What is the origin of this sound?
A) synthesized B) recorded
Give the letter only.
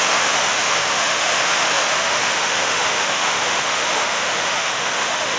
A